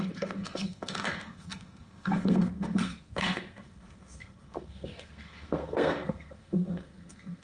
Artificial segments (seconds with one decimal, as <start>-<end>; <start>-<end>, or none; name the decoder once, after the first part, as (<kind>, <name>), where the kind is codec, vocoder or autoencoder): 0.0-7.4 (codec, SNAC)